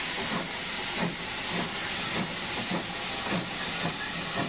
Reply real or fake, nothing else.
real